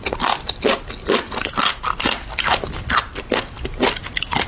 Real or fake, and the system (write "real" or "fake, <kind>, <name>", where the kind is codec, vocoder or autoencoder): real